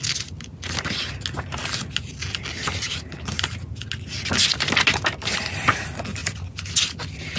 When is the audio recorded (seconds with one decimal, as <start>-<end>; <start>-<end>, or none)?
0.0-7.4